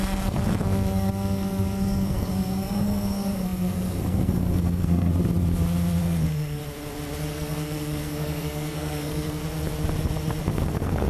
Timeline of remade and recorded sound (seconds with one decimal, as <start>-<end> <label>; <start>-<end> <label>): 0.0-5.1 remade; 5.1-6.0 recorded; 6.0-6.6 remade; 6.6-7.3 recorded; 7.3-9.4 remade; 9.4-10.4 recorded; 10.4-11.1 remade